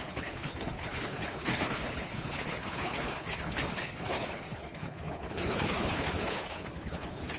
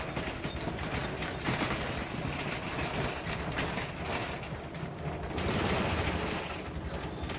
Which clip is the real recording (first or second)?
second